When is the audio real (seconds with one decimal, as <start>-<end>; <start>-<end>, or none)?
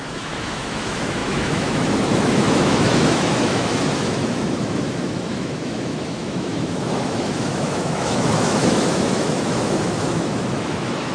none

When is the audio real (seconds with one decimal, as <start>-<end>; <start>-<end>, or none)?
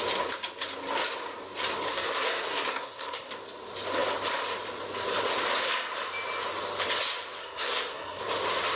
0.0-1.9; 3.3-7.4; 8.2-8.8